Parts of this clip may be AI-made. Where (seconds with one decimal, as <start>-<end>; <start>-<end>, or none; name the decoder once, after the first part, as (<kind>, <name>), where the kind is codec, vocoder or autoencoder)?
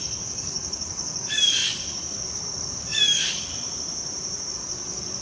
0.0-3.5 (codec, DAC); 4.5-5.2